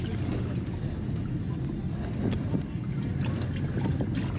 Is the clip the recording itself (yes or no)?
yes